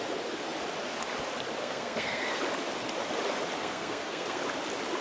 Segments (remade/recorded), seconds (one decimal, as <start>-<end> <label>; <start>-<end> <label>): 0.0-1.6 recorded; 1.6-2.4 remade; 2.4-3.6 recorded; 3.6-4.4 remade; 4.4-5.0 recorded